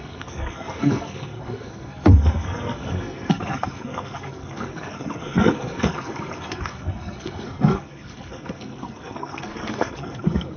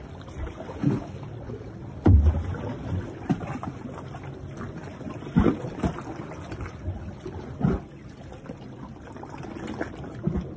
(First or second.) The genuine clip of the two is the second